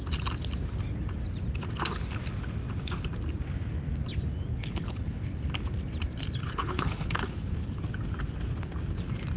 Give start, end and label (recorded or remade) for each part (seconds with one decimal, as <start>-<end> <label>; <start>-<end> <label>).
0.0-4.5 recorded; 4.5-5.2 remade; 5.2-6.4 recorded; 6.4-7.8 remade; 7.8-9.4 recorded